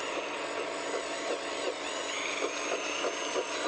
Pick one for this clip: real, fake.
real